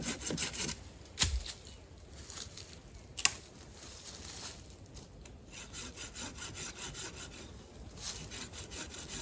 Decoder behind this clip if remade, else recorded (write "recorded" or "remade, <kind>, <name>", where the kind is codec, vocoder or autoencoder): recorded